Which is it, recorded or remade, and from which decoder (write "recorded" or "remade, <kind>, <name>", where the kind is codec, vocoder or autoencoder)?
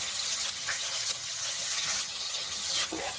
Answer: remade, vocoder, HiFi-GAN